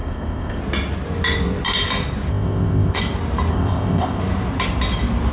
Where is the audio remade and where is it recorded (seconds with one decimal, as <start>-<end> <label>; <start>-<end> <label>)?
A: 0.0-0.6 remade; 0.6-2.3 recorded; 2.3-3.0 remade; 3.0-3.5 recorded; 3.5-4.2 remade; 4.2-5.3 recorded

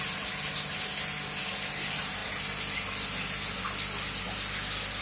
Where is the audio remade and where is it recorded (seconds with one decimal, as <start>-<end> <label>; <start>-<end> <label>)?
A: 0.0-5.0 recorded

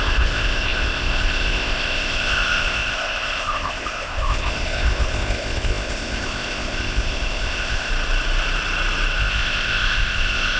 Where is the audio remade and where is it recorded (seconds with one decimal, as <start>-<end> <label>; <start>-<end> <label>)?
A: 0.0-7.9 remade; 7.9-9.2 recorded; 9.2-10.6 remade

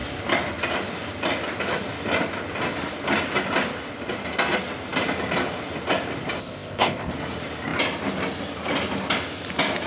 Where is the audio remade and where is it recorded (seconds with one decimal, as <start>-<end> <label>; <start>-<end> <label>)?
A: 0.0-6.4 recorded; 6.4-7.1 remade; 7.1-9.9 recorded

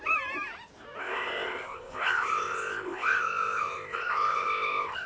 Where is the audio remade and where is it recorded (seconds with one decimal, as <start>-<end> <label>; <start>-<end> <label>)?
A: 0.0-1.0 recorded; 1.0-5.1 remade